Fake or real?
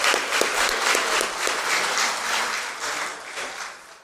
real